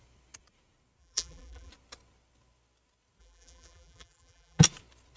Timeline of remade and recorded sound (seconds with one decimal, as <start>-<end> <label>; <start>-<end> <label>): 0.0-1.0 recorded; 1.0-1.7 remade; 1.7-3.2 recorded; 3.2-4.6 remade; 4.6-5.2 recorded